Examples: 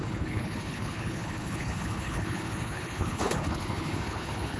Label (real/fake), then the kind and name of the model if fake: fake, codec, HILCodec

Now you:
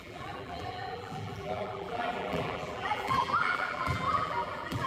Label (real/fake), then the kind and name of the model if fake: fake, vocoder, BigVGAN v2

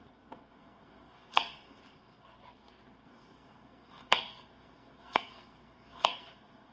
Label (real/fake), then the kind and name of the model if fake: fake, codec, SNAC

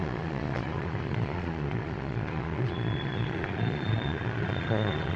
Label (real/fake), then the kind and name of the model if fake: fake, vocoder, Vocos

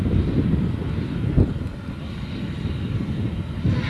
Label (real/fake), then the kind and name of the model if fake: real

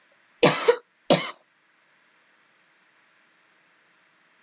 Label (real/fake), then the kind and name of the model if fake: real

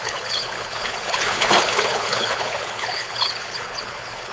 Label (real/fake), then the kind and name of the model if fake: fake, codec, HILCodec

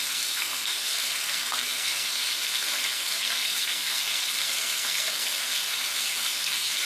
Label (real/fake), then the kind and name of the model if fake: fake, codec, SNAC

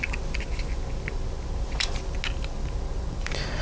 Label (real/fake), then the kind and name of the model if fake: real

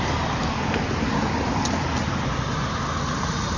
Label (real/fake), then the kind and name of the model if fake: real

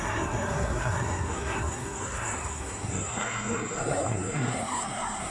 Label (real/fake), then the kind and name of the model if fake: fake, codec, SNAC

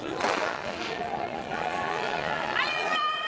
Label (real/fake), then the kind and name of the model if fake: fake, vocoder, Vocos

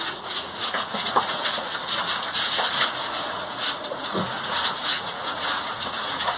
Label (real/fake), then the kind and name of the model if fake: fake, vocoder, Vocos